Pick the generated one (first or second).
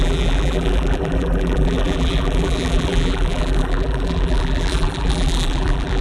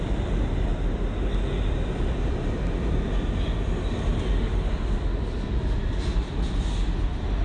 first